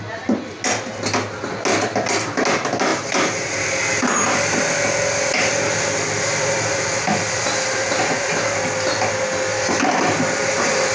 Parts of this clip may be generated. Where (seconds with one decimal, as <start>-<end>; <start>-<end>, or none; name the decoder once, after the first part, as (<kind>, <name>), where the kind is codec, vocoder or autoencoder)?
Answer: none